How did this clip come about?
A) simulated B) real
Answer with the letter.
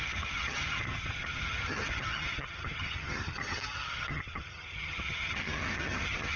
A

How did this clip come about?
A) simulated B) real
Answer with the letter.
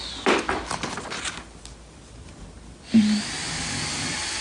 B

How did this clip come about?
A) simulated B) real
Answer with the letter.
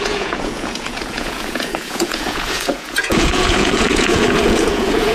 A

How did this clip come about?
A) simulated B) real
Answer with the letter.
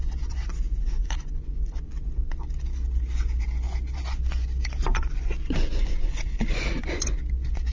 A